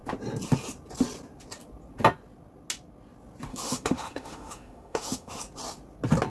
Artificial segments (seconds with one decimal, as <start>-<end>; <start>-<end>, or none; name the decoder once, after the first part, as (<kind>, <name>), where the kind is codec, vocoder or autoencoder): 3.5-5.4 (autoencoder, DAC-VAE)